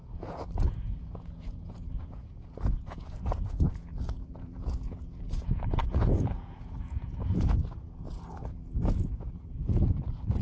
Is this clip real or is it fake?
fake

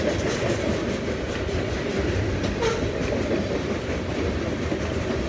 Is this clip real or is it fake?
real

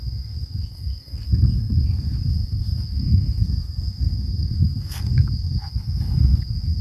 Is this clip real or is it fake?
fake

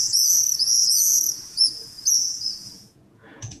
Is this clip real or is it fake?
fake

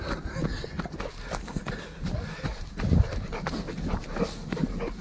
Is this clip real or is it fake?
real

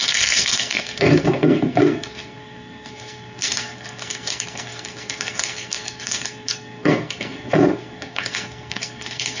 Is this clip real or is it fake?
fake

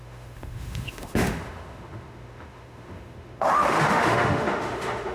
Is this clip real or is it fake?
fake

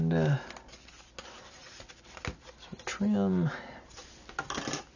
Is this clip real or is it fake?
real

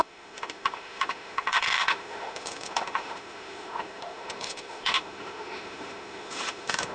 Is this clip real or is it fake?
fake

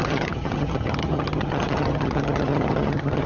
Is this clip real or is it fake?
fake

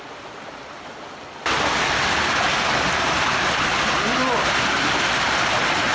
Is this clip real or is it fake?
real